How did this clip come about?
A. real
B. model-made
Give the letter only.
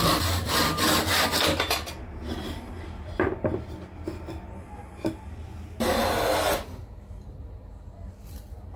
A